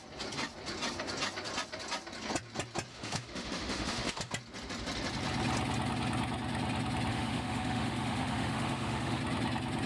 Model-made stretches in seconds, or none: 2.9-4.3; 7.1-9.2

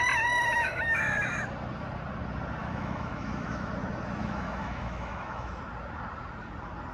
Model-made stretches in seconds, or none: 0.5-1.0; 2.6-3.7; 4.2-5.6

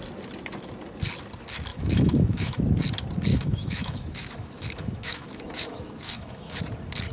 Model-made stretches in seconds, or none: 1.7-2.6; 3.3-6.6

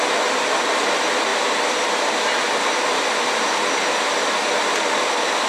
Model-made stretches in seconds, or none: none